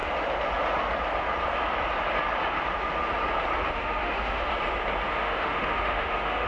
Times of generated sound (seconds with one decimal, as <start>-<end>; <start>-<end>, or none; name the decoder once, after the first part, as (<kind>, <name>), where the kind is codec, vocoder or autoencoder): 3.7-4.5 (autoencoder, DAC-VAE); 5.1-6.5